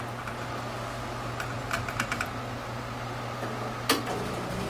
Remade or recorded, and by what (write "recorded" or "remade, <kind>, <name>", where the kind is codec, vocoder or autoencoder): recorded